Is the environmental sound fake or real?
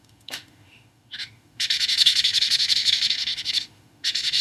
fake